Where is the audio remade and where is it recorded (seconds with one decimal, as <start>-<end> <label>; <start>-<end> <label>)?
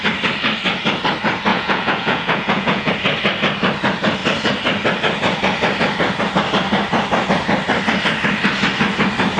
0.0-1.5 recorded; 1.5-2.9 remade; 2.9-9.4 recorded